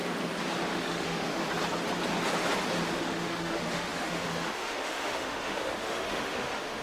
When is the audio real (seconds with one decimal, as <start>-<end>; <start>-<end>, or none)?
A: 0.0-0.7; 1.4-3.0